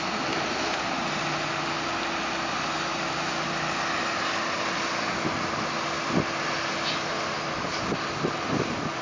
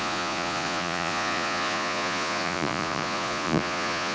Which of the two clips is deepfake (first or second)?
second